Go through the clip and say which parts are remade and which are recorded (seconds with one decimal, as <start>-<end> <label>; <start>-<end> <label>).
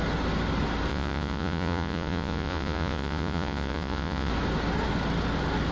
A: 0.0-0.9 recorded; 0.9-4.3 remade; 4.3-5.7 recorded